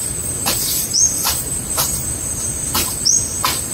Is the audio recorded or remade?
remade